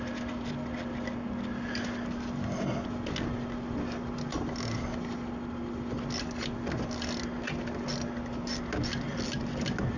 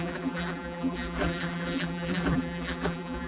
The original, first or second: first